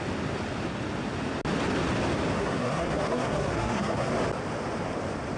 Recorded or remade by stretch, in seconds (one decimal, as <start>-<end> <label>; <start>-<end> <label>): 0.0-2.4 recorded; 2.4-4.1 remade; 4.1-5.4 recorded